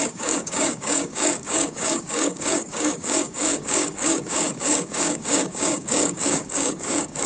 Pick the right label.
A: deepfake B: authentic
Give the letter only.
A